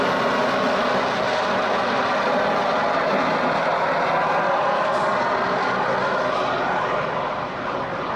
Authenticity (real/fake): real